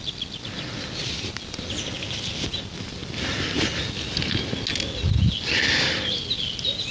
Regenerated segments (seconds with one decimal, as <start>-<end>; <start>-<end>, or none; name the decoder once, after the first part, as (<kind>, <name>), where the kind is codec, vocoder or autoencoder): none